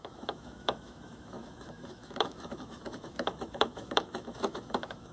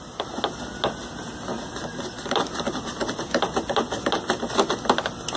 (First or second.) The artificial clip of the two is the first